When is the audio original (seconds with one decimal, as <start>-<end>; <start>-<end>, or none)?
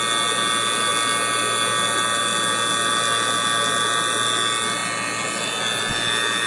0.0-6.5